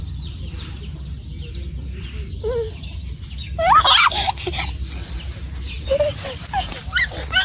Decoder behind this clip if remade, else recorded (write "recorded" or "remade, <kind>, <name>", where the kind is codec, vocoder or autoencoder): recorded